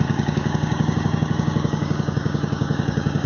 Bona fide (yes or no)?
no